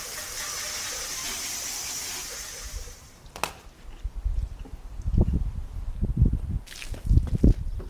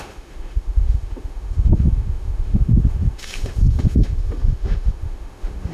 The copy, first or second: second